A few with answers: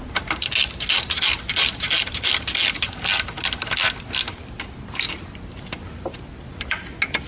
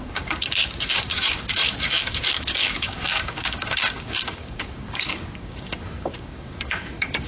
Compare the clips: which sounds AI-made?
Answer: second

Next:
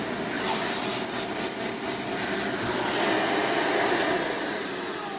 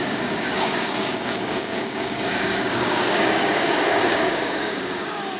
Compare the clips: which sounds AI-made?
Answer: second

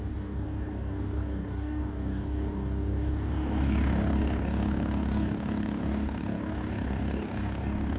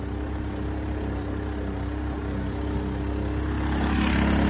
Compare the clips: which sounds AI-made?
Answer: first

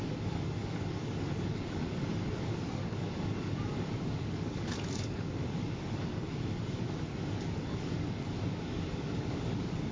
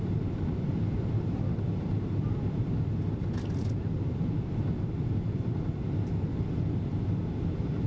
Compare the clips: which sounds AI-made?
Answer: first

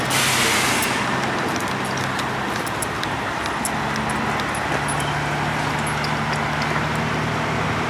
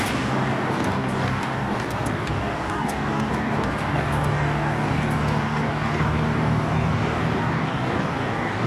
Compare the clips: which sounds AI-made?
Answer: second